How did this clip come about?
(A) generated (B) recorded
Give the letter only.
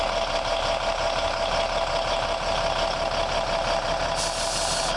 B